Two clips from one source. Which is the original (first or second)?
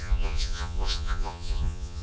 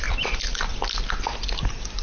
second